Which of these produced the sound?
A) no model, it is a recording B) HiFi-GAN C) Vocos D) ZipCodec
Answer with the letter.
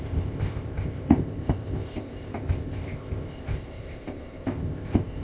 D